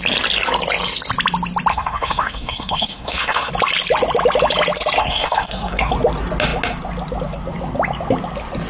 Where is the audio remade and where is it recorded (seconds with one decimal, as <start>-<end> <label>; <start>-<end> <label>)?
0.0-1.7 recorded; 1.7-3.5 remade; 3.5-5.0 recorded; 5.0-5.9 remade; 5.9-8.7 recorded

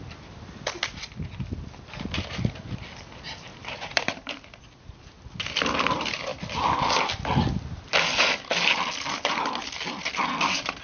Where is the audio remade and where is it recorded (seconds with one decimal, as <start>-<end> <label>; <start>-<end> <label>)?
0.0-3.5 recorded; 3.5-4.6 remade; 4.6-10.8 recorded